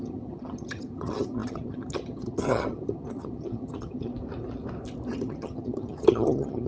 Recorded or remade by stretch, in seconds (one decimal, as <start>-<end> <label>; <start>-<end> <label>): 0.0-4.1 remade; 4.1-5.1 recorded; 5.1-6.7 remade